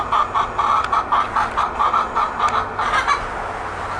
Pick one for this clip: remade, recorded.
recorded